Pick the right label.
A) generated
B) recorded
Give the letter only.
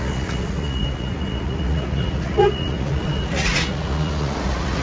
A